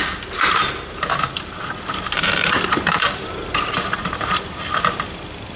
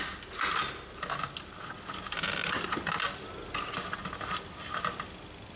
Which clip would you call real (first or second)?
second